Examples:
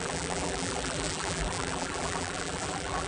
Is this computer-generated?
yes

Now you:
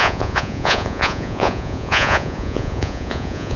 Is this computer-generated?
yes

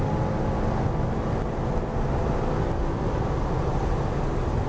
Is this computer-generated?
no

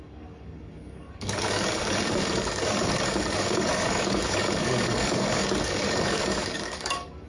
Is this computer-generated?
yes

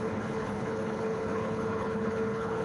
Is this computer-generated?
yes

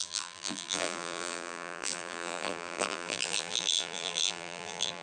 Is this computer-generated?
yes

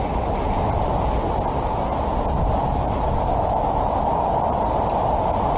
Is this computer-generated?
no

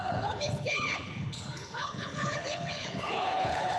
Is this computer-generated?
yes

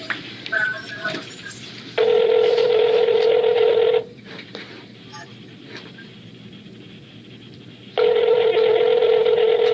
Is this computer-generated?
yes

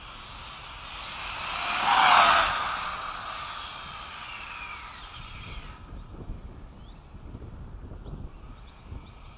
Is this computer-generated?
no